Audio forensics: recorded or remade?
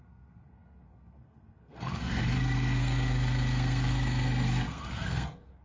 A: remade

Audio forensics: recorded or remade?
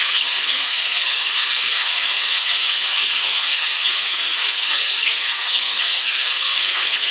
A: remade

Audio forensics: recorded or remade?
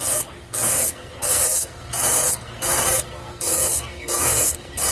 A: remade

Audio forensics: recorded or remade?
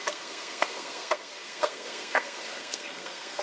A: remade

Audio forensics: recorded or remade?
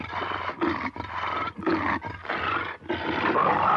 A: recorded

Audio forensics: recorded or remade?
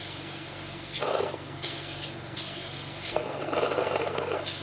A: remade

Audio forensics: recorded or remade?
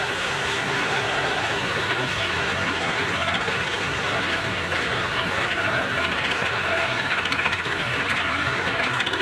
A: remade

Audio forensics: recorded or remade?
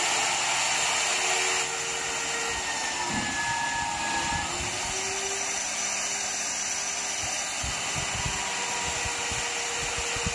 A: recorded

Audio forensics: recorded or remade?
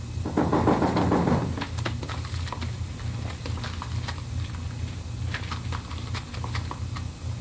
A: recorded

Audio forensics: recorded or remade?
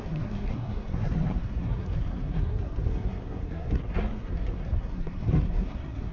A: remade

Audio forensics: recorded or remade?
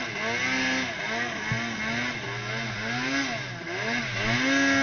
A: recorded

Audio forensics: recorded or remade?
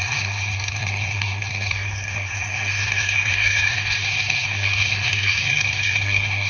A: remade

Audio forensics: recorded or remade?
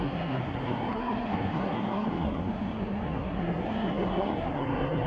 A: remade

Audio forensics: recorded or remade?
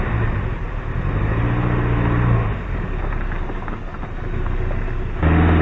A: recorded